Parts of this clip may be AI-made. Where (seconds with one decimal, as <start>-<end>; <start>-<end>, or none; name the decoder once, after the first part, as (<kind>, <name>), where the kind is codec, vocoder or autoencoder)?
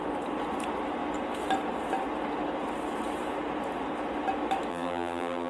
4.7-5.5 (vocoder, BigVGAN v2)